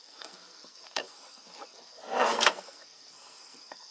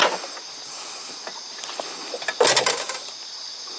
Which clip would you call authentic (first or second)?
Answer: second